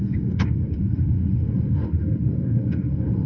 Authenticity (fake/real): fake